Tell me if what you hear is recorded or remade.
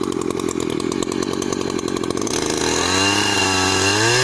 recorded